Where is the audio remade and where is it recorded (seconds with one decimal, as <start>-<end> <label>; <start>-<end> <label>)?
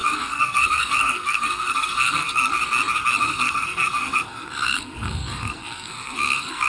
0.0-2.5 remade; 2.5-3.2 recorded; 3.2-6.7 remade